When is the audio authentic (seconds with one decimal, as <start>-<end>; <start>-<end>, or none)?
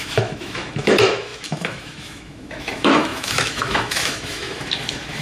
none